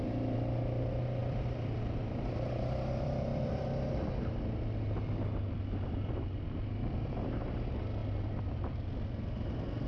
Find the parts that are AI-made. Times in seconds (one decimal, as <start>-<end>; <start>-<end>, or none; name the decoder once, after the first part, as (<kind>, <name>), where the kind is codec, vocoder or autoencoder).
1.2-4.0 (vocoder, BigVGAN v2)